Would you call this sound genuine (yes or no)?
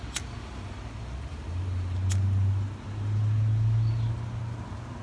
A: yes